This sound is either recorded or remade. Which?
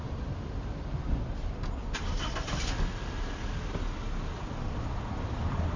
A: recorded